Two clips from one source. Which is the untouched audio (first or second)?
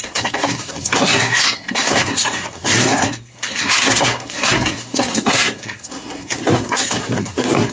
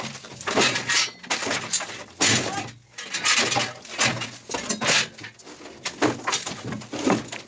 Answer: second